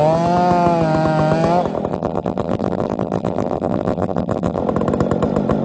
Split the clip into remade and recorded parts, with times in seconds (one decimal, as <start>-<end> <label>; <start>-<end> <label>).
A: 0.0-1.9 recorded; 1.9-4.6 remade; 4.6-5.6 recorded